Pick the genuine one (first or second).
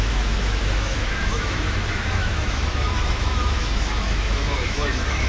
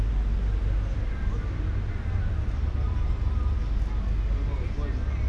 second